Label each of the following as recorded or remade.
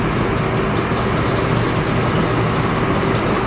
recorded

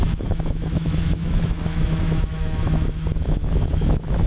remade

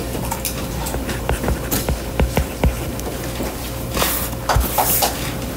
recorded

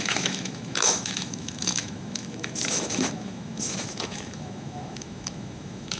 remade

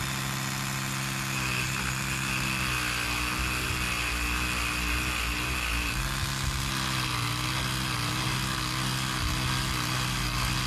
recorded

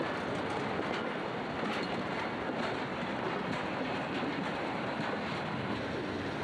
recorded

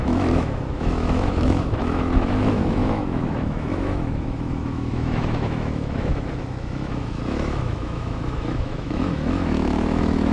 remade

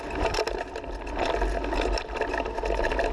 recorded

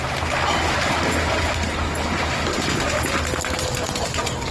recorded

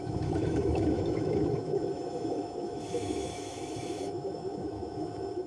remade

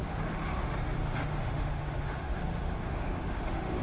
remade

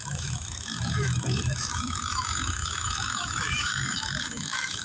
remade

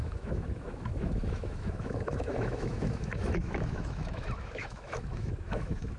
remade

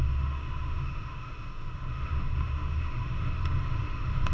remade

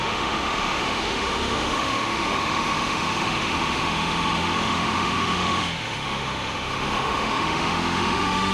remade